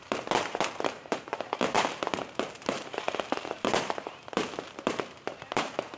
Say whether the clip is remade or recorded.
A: remade